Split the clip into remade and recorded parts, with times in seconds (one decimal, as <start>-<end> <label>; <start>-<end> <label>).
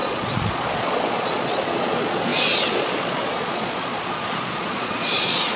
0.0-5.6 remade